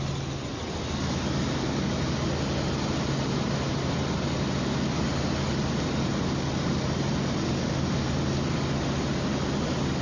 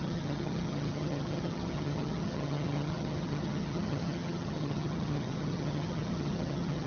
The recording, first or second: first